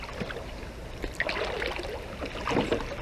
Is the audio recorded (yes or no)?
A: yes